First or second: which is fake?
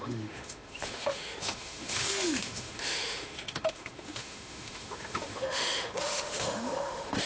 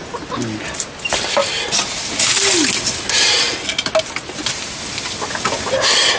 first